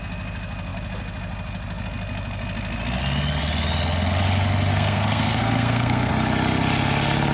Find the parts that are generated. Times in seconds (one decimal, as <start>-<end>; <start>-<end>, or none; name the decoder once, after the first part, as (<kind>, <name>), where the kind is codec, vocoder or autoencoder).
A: 4.7-6.1 (codec, SNAC)